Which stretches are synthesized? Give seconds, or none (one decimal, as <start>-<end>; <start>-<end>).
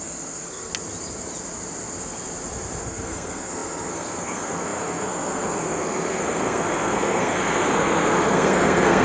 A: 0.0-0.7; 2.8-9.0